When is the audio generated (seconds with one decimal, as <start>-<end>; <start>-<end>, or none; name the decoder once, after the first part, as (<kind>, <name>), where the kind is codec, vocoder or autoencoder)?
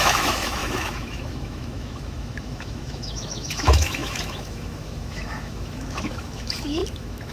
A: 0.0-7.3 (autoencoder, DAC-VAE)